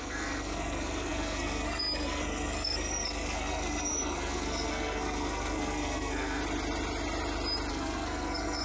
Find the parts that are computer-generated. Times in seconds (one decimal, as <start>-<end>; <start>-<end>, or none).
0.0-6.4; 7.7-8.6

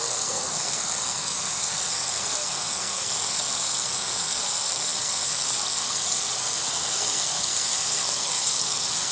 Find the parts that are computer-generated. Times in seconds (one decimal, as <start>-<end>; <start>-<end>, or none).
0.0-9.1

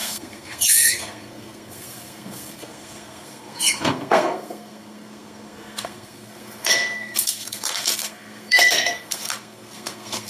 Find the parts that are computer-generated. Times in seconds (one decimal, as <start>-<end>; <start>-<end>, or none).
0.0-10.3

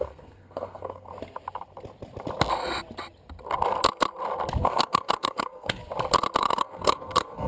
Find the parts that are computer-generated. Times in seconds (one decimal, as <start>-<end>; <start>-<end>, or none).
0.0-1.1; 4.6-5.8; 6.4-7.5

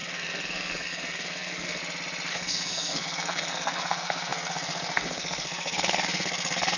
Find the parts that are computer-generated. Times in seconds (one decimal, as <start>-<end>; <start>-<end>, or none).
0.0-1.8; 2.3-6.8

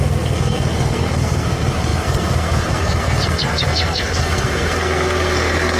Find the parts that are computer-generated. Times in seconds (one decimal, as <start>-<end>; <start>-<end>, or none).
0.0-5.8